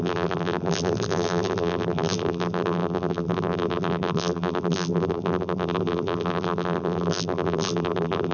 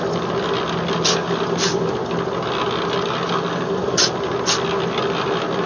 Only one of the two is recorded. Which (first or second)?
second